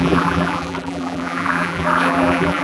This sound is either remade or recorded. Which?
remade